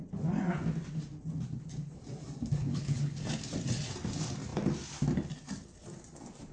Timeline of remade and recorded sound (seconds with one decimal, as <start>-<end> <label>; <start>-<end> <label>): 0.0-2.6 recorded; 2.6-3.2 remade; 3.2-6.5 recorded